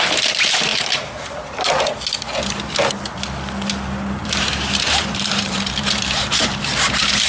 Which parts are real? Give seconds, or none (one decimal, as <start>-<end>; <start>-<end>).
0.0-0.7; 1.9-4.2; 6.6-7.3